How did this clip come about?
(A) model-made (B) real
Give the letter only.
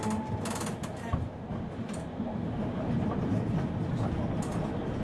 B